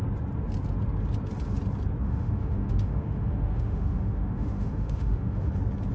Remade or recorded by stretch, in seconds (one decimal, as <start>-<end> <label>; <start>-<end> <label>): 0.0-2.0 recorded; 2.0-5.5 remade; 5.5-5.9 recorded